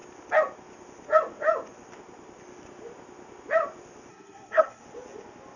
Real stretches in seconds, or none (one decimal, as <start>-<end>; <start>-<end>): 0.0-4.1; 4.8-5.6